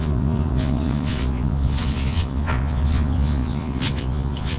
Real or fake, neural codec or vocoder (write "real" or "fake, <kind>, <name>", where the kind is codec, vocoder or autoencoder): fake, vocoder, Vocos